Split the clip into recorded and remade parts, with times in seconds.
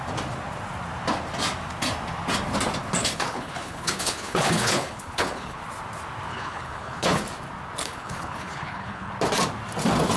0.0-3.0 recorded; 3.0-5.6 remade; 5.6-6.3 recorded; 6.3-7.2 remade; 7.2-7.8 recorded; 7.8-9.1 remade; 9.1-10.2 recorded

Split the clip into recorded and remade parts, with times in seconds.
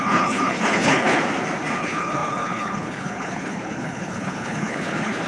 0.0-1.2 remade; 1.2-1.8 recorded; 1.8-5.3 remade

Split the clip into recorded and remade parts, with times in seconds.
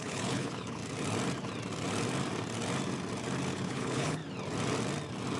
0.0-0.8 remade; 0.8-3.5 recorded; 3.5-4.2 remade; 4.2-5.4 recorded